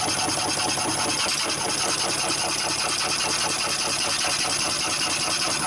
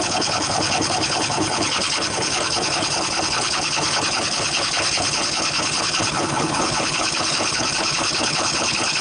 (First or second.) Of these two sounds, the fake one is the second